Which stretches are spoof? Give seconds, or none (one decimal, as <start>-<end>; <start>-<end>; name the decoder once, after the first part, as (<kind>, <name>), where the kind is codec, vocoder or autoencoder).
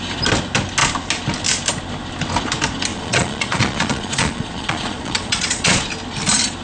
2.9-5.8 (vocoder, Vocos)